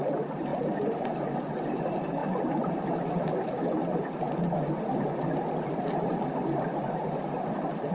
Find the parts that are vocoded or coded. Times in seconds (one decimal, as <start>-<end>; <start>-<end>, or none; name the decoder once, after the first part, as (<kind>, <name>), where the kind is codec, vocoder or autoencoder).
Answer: none